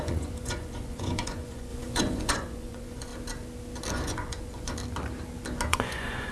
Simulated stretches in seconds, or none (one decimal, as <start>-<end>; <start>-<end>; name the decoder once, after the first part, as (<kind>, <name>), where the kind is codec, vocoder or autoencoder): 0.0-3.1 (vocoder, Vocos); 3.9-4.8; 5.7-6.3